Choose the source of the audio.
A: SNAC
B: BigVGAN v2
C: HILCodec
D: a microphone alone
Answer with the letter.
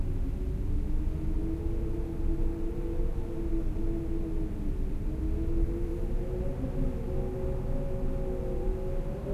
D